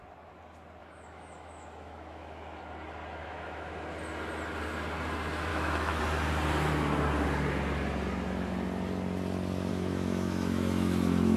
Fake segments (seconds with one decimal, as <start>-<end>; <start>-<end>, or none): 0.8-2.6; 3.2-3.7; 5.5-6.0; 9.7-11.4